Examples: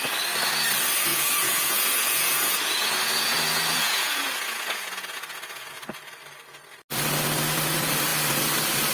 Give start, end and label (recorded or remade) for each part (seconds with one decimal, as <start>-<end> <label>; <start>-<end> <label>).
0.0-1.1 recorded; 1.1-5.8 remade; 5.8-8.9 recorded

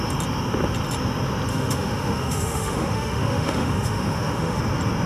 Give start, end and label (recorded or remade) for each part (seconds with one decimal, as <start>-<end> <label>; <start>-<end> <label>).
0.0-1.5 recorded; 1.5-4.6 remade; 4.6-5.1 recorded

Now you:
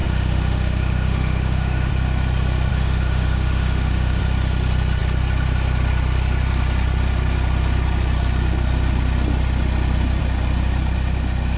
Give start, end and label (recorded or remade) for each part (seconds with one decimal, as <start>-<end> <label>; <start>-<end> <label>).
0.0-1.9 remade; 1.9-2.7 recorded; 2.7-4.2 remade; 4.2-11.6 recorded